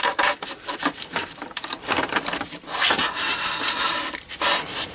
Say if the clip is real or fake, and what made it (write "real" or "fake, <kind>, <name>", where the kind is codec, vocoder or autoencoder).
fake, vocoder, BigVGAN v2